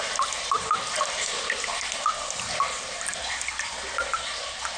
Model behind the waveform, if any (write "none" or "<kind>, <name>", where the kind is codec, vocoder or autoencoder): none